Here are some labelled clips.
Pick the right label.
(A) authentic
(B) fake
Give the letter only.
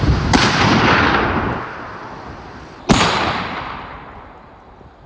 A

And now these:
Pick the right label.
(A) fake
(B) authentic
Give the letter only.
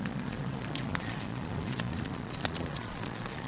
A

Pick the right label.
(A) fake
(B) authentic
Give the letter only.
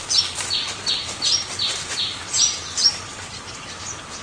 B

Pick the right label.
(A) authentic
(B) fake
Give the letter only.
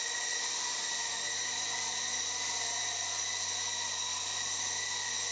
A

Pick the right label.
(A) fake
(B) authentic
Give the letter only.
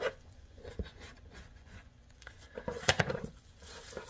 A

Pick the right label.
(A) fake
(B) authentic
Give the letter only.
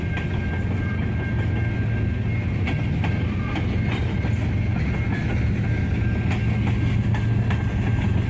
B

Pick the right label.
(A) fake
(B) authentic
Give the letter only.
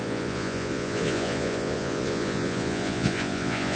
A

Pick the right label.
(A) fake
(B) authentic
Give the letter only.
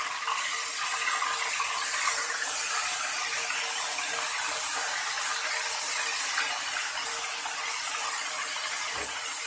B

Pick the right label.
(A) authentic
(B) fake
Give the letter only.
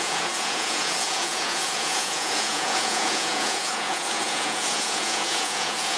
B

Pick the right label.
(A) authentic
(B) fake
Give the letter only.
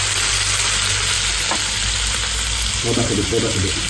A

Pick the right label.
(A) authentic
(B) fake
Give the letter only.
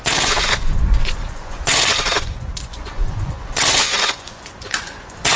B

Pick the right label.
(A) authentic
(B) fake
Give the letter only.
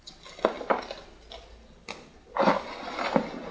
A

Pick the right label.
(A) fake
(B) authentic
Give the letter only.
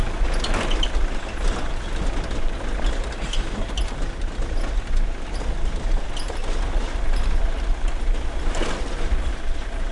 B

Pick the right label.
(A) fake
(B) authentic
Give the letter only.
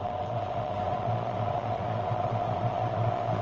A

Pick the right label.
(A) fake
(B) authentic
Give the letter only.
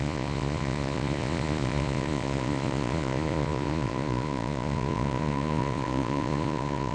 A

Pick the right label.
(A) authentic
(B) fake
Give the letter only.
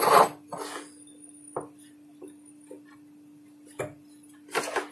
A